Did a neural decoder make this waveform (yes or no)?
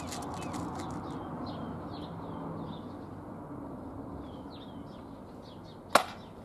no